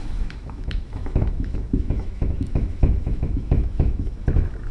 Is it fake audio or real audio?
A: fake